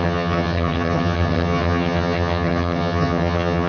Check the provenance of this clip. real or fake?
fake